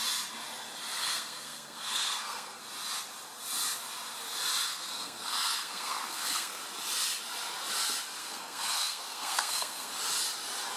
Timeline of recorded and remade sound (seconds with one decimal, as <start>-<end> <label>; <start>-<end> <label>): 0.0-1.0 recorded; 1.0-2.6 remade; 2.6-4.7 recorded; 4.7-6.6 remade; 6.6-8.2 recorded; 8.2-9.9 remade; 9.9-10.8 recorded